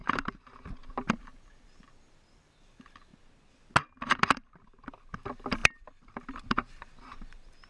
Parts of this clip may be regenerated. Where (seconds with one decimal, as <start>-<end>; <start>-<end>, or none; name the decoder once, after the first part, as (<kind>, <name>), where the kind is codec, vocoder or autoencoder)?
0.0-3.1 (vocoder, BigVGAN v2); 4.0-7.7